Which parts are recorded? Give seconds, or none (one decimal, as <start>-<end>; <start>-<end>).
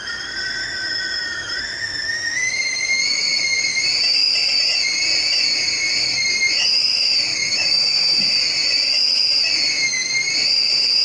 0.0-0.6; 3.6-7.3; 8.2-11.0